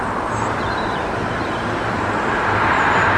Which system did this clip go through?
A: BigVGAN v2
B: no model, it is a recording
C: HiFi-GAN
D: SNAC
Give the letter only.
A